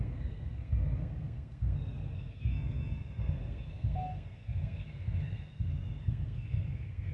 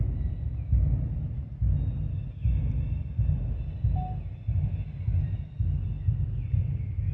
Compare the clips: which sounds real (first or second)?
second